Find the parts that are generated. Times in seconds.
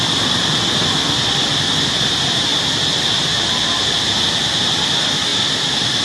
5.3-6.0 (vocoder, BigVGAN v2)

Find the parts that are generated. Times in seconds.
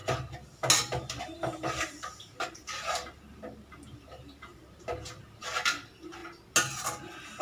1.2-6.2 (vocoder, BigVGAN v2)